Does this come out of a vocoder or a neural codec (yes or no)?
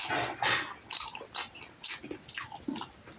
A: no